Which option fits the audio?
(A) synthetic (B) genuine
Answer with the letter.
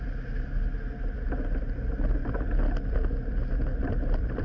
B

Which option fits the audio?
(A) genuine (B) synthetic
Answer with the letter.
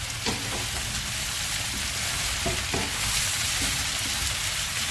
A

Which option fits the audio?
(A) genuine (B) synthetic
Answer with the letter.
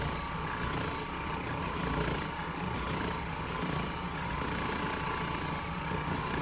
A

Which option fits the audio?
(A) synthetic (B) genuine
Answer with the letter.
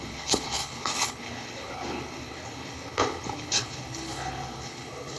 A